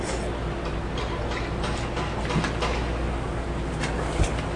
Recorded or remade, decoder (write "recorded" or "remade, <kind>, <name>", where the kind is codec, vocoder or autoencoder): recorded